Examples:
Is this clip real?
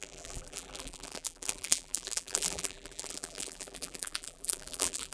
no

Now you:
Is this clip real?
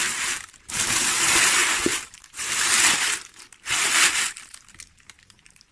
no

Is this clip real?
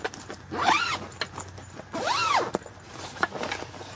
yes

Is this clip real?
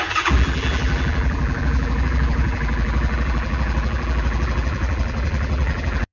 no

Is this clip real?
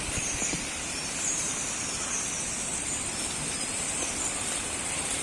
no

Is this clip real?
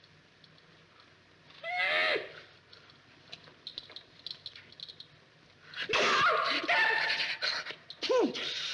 yes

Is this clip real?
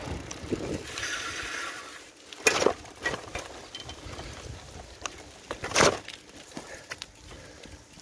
yes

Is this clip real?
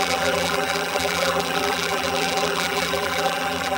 no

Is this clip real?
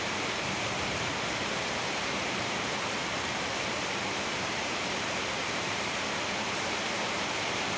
no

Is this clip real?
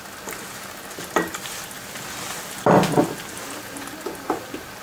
yes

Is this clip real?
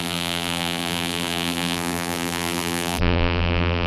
no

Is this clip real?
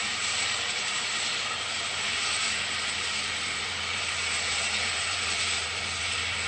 no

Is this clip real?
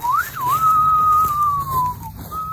yes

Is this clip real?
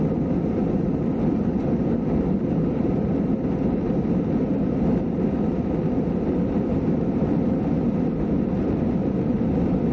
no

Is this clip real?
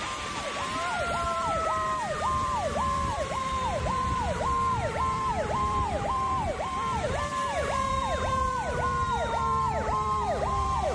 no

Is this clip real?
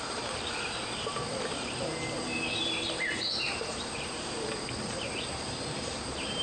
no